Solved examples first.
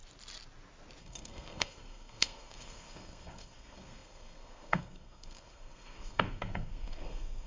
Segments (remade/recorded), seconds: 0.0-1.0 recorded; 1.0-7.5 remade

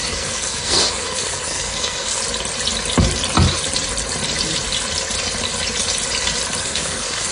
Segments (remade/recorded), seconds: 0.0-2.2 remade; 2.2-6.6 recorded; 6.6-7.3 remade

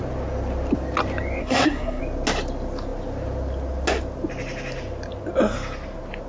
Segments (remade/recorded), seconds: 0.0-1.4 recorded; 1.4-2.0 remade; 2.0-6.3 recorded

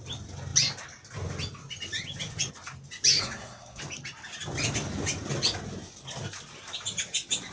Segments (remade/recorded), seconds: 0.0-3.2 recorded; 3.2-3.8 remade; 3.8-7.5 recorded

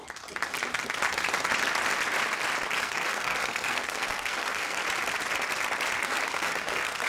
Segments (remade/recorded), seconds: 0.0-2.8 recorded; 2.8-4.8 remade; 4.8-6.0 recorded; 6.0-7.1 remade